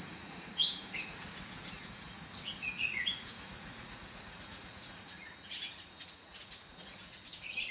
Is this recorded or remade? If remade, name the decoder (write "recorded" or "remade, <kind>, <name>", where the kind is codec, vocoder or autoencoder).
remade, vocoder, Vocos